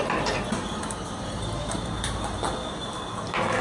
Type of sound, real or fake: real